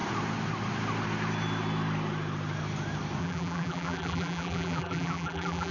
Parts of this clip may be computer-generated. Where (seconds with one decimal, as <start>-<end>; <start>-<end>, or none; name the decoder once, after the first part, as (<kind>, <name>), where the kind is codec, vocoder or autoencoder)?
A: 3.2-5.7 (vocoder, BigVGAN v2)